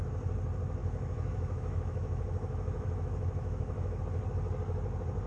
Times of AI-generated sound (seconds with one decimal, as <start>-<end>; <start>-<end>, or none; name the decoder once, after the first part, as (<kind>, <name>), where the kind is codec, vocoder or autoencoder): 0.8-4.0 (autoencoder, DAC-VAE)